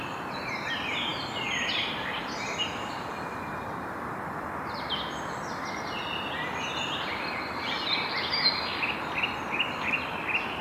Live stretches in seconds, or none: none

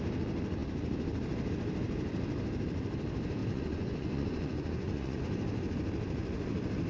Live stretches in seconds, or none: 0.0-3.4; 5.2-6.9